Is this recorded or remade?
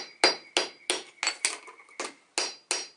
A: recorded